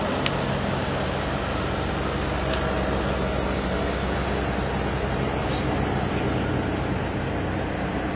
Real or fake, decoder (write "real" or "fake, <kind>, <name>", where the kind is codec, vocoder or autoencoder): real